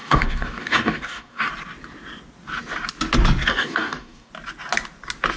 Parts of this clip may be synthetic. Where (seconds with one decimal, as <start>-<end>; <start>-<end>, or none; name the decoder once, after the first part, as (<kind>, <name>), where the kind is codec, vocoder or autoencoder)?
0.0-1.5 (codec, DAC); 3.5-4.3